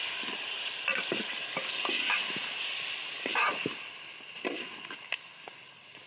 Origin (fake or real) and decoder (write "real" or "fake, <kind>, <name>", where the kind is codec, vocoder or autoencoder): real